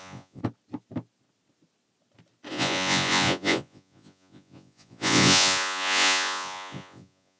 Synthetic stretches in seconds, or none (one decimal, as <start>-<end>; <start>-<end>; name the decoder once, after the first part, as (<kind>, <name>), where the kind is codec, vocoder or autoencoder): 0.0-0.4 (vocoder, Vocos); 2.5-7.4